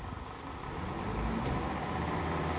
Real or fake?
real